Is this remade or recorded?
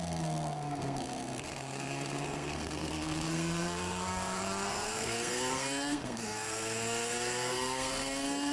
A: remade